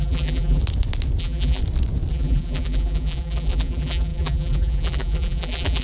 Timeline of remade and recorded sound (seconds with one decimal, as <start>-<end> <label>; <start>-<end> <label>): 0.0-0.6 remade; 0.6-1.2 recorded; 1.2-1.6 remade; 1.6-2.1 recorded; 2.1-5.8 remade

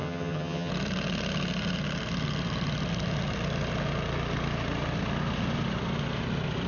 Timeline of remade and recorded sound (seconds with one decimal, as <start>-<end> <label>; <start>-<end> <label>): 0.0-0.7 remade; 0.7-6.7 recorded

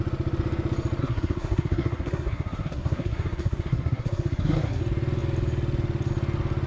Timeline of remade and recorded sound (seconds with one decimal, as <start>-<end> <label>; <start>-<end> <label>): 0.0-1.0 recorded; 1.0-4.8 remade; 4.8-6.7 recorded

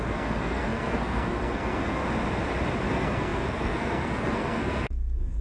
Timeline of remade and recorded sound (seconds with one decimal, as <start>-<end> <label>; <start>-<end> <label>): 0.0-2.0 remade; 2.0-2.9 recorded; 2.9-5.4 remade

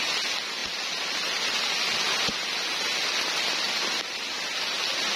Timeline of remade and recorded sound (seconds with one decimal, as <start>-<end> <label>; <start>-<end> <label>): 0.0-5.2 recorded

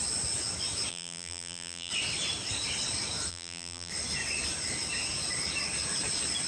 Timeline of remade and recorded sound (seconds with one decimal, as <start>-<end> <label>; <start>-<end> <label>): 0.0-0.9 recorded; 0.9-1.9 remade; 1.9-3.3 recorded; 3.3-3.9 remade; 3.9-6.5 recorded